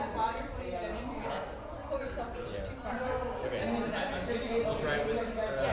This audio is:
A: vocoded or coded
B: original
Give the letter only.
B